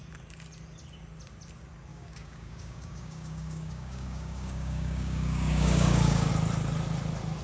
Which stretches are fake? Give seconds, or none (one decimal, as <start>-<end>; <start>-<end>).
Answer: 1.9-6.3